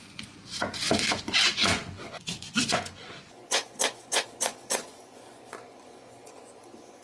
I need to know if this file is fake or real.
fake